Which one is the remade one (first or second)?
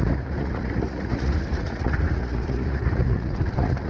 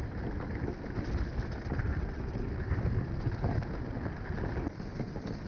first